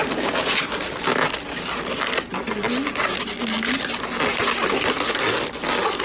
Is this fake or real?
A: real